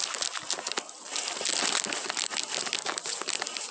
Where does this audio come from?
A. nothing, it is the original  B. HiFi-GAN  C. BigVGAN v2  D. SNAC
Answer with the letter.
A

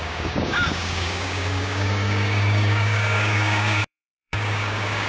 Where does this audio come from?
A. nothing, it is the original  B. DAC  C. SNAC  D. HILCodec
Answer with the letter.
B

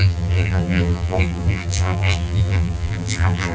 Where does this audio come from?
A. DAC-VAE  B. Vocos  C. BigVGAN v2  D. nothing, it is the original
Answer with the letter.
C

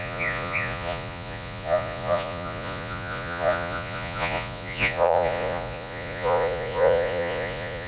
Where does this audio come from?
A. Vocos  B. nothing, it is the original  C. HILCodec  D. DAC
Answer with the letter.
A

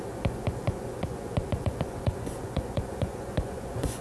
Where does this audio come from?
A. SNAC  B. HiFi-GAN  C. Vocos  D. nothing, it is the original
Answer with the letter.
C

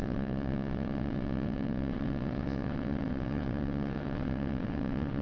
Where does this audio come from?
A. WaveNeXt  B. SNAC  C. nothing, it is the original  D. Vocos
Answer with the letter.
A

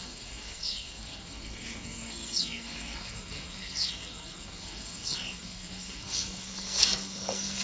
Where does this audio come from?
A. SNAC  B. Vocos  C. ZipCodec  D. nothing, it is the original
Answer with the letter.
A